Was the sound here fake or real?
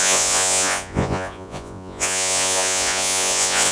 fake